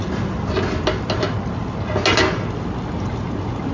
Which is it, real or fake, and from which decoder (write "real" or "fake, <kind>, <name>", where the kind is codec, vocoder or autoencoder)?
real